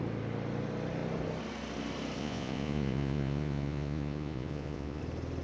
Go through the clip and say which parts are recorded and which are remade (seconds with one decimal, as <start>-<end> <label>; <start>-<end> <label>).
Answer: 0.0-2.2 recorded; 2.2-5.0 remade; 5.0-5.4 recorded